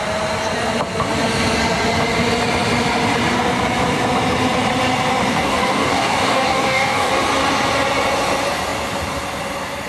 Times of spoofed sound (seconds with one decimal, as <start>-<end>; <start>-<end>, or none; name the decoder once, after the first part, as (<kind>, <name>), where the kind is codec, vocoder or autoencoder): 5.3-7.1 (codec, DAC)